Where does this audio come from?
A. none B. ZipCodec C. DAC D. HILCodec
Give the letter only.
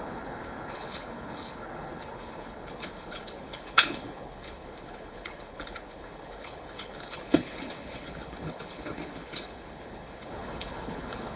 D